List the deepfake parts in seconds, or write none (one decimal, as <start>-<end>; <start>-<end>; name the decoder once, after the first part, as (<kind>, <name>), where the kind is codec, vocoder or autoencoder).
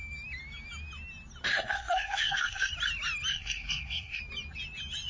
1.5-2.7 (codec, SNAC); 3.3-4.2